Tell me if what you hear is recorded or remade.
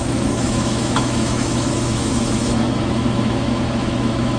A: remade